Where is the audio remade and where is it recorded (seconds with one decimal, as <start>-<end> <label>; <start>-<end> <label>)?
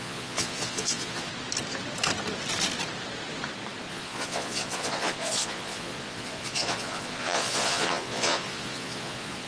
0.0-1.3 remade; 1.3-3.9 recorded; 3.9-9.5 remade